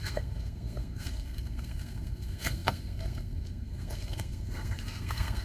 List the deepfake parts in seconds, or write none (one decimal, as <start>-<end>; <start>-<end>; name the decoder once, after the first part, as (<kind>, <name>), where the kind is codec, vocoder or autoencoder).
0.0-5.4 (codec, SNAC)